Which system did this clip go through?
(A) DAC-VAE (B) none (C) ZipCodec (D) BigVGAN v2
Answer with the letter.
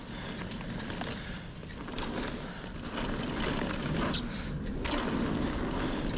B